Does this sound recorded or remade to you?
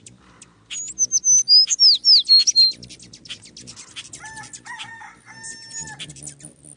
recorded